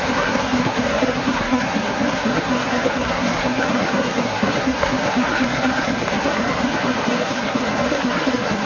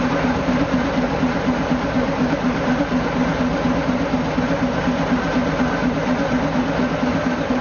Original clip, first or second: second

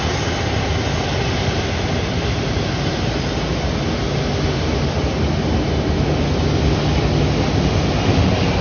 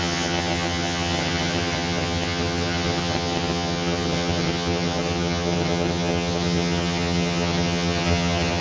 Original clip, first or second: first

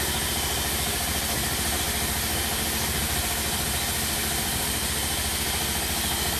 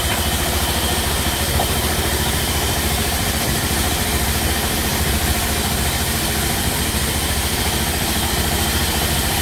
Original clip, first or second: first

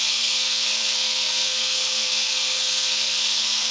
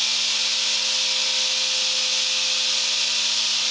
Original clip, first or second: second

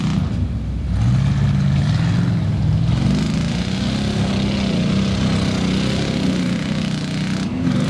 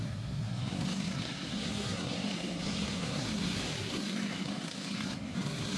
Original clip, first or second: first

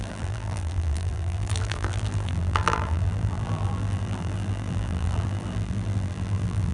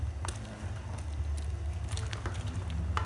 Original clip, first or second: second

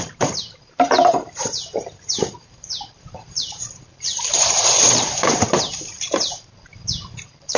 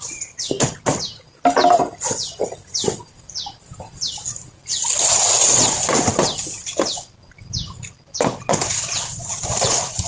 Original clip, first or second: second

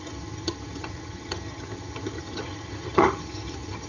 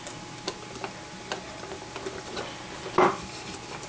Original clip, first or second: second